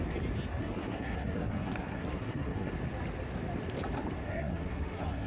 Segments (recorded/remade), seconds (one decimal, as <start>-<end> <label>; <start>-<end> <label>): 0.0-0.6 recorded; 0.6-2.7 remade; 2.7-4.2 recorded; 4.2-5.3 remade